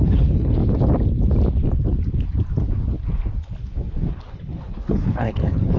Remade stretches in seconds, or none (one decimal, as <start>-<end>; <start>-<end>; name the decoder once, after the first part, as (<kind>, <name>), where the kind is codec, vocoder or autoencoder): 0.0-0.6 (codec, HILCodec); 4.1-5.8